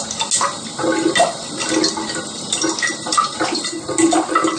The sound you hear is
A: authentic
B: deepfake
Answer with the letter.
A